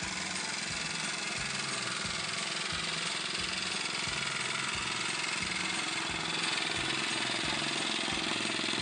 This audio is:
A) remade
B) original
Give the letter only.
B